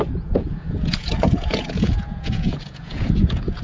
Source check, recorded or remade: remade